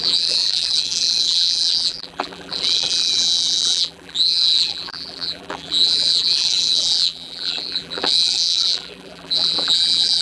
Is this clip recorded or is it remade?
remade